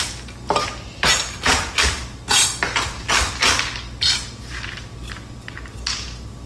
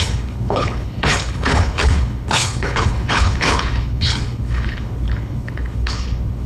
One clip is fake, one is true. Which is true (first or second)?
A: first